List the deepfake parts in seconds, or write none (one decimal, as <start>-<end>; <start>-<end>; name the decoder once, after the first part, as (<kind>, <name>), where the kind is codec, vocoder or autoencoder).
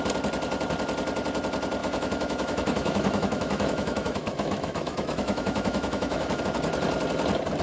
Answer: 1.8-6.4 (autoencoder, DAC-VAE)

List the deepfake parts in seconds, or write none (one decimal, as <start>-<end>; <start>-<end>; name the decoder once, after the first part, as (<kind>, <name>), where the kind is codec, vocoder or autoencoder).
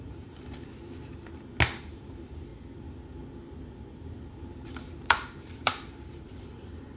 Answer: 0.0-0.7 (vocoder, BigVGAN v2); 1.8-2.5; 4.5-7.0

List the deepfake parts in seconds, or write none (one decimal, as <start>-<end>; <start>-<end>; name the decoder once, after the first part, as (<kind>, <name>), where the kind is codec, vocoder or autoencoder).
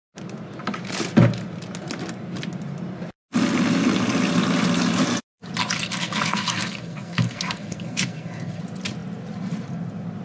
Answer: 5.6-8.6 (codec, SNAC)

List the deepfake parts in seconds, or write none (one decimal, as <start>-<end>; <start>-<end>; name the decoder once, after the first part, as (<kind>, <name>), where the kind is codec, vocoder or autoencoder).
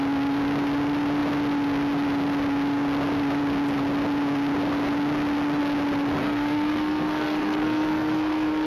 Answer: 6.2-8.7 (codec, SNAC)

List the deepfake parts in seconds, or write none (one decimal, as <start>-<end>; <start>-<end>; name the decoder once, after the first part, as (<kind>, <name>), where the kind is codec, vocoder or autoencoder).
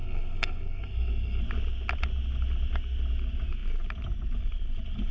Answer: 0.0-1.4 (codec, SNAC)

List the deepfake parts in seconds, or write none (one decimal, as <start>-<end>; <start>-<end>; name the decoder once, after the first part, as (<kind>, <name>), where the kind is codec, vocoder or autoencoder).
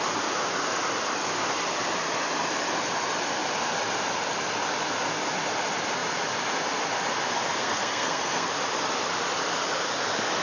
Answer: 7.6-8.5 (codec, SNAC)